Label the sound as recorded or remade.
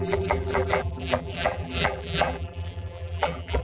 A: remade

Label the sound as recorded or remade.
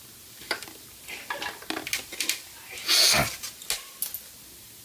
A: recorded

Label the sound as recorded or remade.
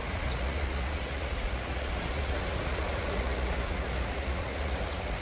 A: remade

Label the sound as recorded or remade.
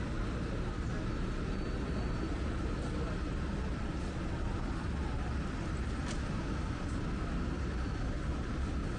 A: recorded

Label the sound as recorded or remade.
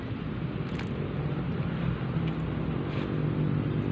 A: recorded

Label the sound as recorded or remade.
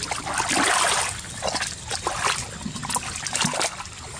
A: recorded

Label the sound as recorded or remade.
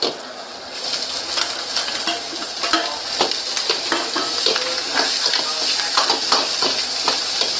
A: recorded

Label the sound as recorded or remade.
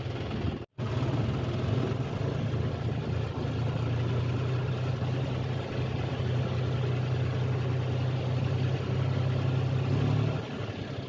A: recorded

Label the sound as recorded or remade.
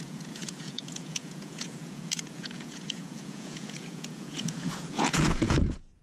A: remade